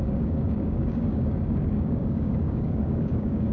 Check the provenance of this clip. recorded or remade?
remade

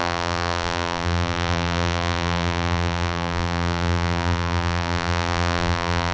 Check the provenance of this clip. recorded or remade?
remade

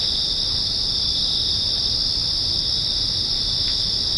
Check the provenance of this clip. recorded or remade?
recorded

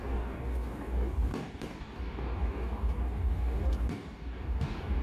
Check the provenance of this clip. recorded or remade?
remade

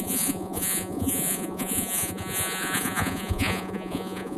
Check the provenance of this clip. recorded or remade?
remade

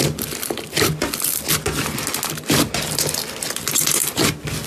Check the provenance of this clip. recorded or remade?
recorded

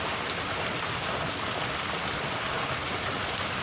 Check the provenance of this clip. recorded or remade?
recorded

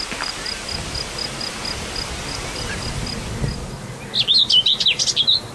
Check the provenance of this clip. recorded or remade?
recorded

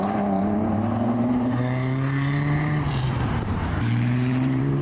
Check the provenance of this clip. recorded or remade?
remade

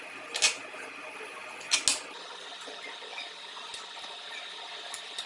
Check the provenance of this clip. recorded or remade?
recorded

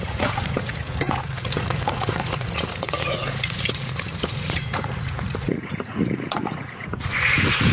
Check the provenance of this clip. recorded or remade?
remade